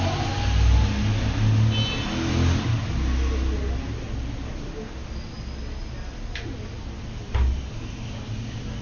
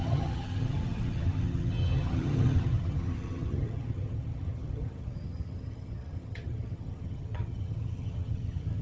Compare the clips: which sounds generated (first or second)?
second